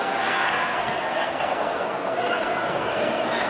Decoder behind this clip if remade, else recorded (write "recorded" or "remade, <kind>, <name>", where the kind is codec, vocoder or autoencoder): remade, codec, SNAC